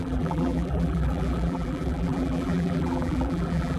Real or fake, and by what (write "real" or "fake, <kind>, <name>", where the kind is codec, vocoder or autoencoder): fake, vocoder, BigVGAN v2